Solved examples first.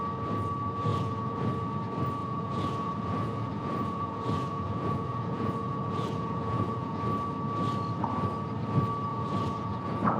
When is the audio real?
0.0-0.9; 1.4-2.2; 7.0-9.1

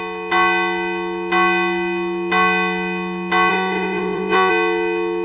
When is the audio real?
0.0-3.5; 4.5-5.2

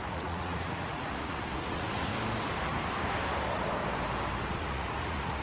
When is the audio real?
2.1-4.5

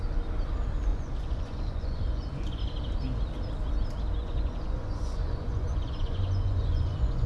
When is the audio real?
0.0-0.9; 2.6-4.2

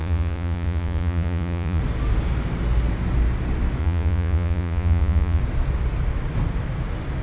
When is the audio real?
1.8-3.8; 5.4-7.2

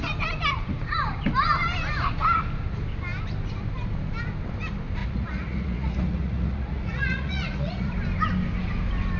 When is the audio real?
0.0-5.0; 7.9-9.2